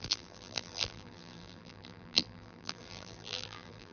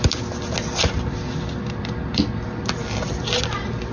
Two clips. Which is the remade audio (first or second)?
first